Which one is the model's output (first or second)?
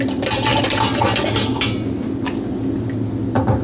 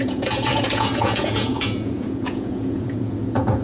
second